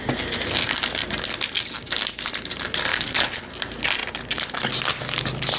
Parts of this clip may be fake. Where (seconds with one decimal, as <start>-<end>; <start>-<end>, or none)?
2.9-3.5